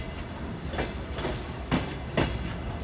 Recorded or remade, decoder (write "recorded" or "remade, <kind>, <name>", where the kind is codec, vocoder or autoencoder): recorded